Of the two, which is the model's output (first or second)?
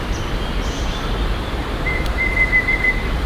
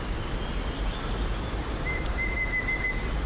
first